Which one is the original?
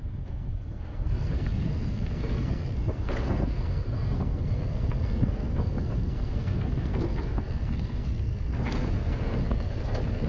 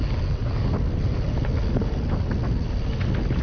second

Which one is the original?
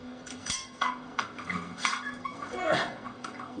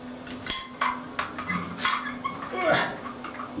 second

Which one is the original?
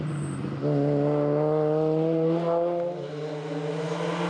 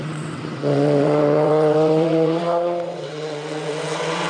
first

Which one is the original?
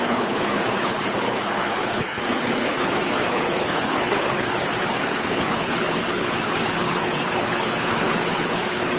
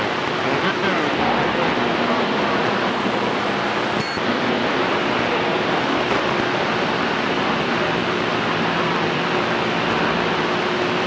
second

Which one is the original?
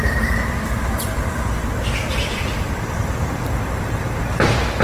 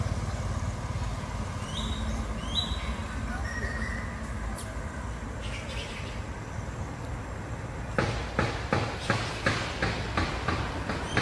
second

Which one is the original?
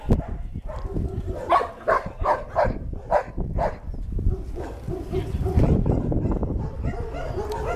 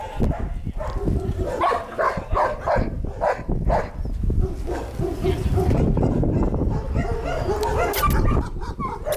second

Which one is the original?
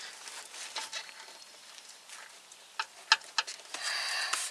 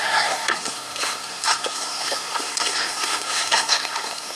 first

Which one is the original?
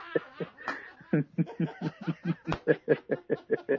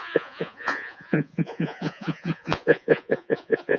first